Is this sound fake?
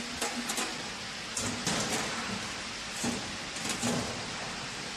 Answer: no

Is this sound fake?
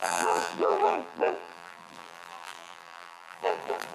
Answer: yes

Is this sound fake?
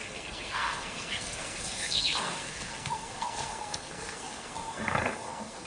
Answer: yes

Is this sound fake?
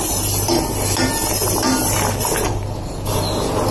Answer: no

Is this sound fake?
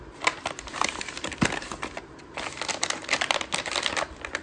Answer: no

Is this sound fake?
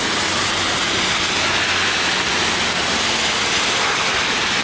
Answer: no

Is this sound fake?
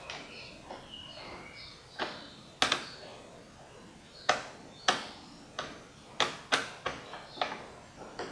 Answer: no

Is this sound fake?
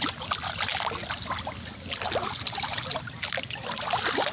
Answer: no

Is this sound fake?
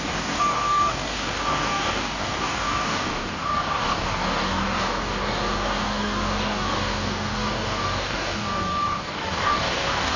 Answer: yes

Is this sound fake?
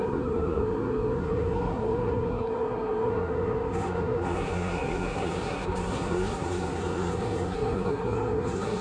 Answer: yes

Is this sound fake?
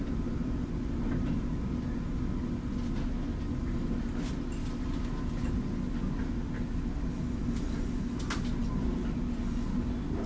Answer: no